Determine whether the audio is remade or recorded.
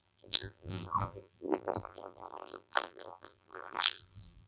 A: remade